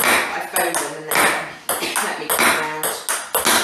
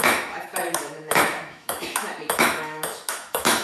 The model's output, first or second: second